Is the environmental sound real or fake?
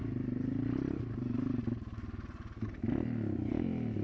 real